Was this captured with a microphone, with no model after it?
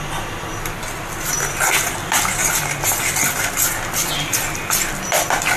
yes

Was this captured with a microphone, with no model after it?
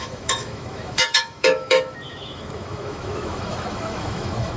no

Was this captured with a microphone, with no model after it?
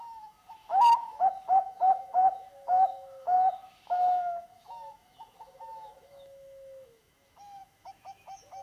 no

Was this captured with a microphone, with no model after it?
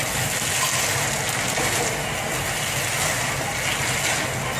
yes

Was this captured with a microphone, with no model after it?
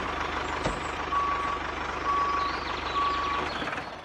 yes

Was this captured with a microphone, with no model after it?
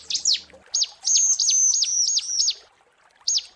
yes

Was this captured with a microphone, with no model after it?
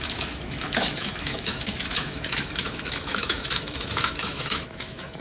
no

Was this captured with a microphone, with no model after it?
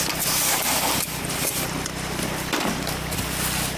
yes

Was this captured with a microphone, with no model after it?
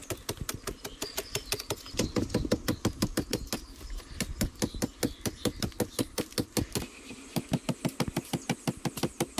yes